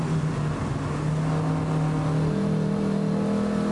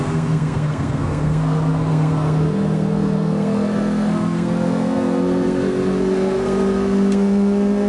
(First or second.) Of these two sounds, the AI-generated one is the second